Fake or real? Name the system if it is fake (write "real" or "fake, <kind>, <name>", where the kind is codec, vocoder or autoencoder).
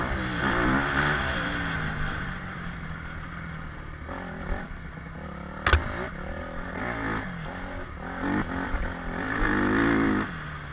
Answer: real